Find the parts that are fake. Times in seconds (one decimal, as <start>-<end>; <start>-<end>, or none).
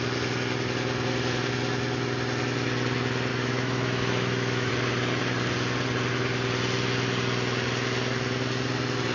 3.3-4.7